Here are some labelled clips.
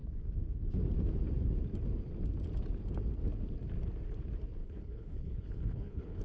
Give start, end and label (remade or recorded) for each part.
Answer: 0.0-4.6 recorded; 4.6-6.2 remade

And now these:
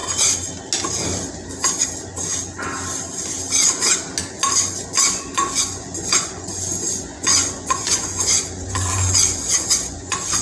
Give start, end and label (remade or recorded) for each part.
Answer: 0.0-4.6 recorded; 4.6-10.4 remade

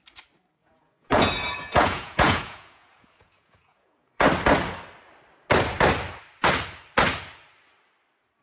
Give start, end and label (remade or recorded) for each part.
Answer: 0.0-0.6 recorded; 0.6-4.2 remade; 4.2-8.4 recorded

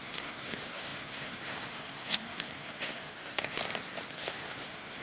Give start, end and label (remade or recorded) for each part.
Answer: 0.0-3.6 remade; 3.6-4.1 recorded; 4.1-5.0 remade

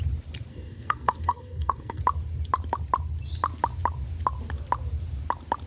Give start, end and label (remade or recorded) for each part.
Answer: 0.0-0.5 recorded; 0.5-2.0 remade; 2.0-5.7 recorded

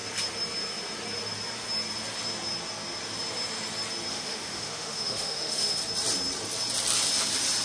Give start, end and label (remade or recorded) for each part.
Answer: 0.0-4.1 recorded; 4.1-5.8 remade; 5.8-7.6 recorded

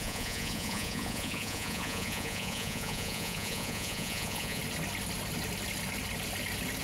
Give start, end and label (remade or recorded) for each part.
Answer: 0.0-4.6 remade; 4.6-6.8 recorded

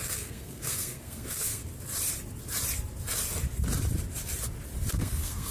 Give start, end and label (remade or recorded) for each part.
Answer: 0.0-1.6 remade; 1.6-4.9 recorded; 4.9-5.5 remade